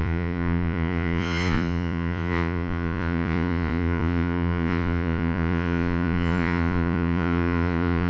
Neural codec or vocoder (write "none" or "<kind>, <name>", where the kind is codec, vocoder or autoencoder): vocoder, Vocos